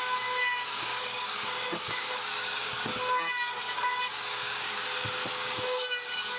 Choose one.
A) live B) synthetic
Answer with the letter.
B